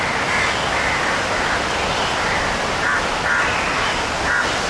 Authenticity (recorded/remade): recorded